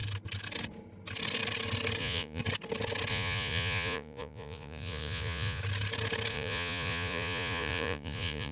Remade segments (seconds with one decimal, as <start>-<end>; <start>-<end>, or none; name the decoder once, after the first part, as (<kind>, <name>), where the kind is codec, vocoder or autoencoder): 2.0-2.4 (vocoder, Vocos); 3.1-5.6; 6.3-8.5

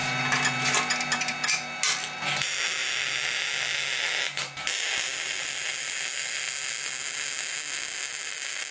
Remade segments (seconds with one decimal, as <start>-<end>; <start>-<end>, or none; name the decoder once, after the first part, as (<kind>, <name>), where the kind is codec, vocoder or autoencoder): none

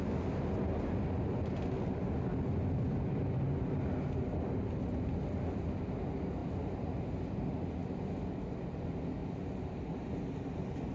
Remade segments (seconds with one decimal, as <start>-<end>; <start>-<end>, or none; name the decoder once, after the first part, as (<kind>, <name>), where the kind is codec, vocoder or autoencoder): none

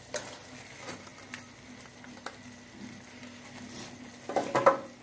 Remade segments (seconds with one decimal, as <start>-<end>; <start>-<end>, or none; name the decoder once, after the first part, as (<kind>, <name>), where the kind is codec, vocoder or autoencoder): none

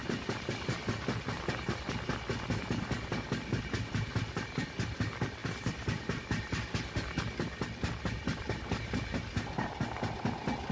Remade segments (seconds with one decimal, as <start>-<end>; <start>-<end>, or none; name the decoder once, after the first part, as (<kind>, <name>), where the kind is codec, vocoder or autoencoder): none

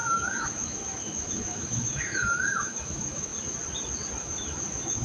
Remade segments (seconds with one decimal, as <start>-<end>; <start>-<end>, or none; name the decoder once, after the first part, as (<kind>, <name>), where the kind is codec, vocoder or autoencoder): 0.0-3.3 (autoencoder, DAC-VAE); 4.2-5.0